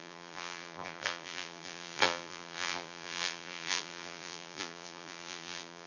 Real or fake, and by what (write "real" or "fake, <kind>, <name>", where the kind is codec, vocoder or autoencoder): fake, vocoder, BigVGAN v2